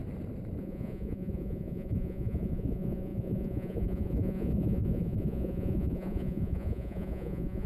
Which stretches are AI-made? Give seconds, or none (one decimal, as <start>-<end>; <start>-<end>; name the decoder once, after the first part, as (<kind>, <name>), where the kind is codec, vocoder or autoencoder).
0.6-7.7 (vocoder, Vocos)